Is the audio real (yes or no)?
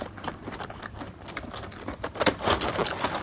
no